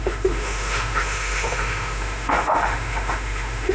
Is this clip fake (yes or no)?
yes